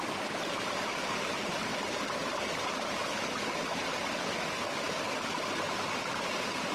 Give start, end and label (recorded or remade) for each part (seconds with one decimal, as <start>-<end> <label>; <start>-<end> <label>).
0.0-1.6 remade; 1.6-2.1 recorded; 2.1-3.1 remade; 3.1-6.2 recorded; 6.2-6.7 remade